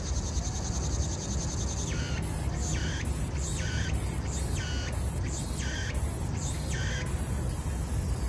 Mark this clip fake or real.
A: real